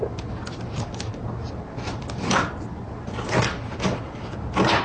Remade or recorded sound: recorded